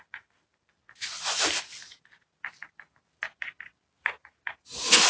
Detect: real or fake real